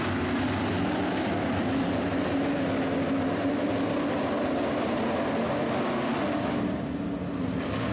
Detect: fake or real real